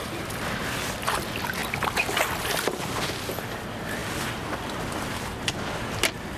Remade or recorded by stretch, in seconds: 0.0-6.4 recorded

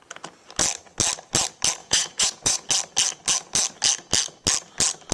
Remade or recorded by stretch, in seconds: 0.0-1.8 recorded; 1.8-2.7 remade; 2.7-5.1 recorded